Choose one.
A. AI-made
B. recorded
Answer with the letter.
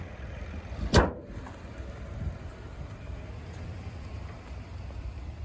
B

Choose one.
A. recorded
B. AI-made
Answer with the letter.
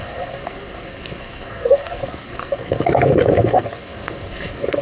B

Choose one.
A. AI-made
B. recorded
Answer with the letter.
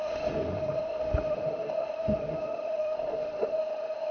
A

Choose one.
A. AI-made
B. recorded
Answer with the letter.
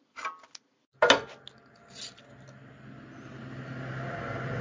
B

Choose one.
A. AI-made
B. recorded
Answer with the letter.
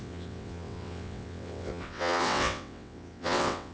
A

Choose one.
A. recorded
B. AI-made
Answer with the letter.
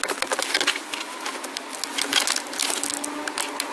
A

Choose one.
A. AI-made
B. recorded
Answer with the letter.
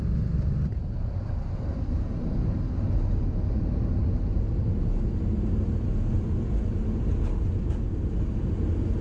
B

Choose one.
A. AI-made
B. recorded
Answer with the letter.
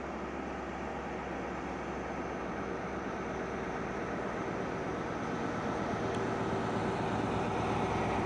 B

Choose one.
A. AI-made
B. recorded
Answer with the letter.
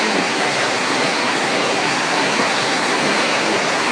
A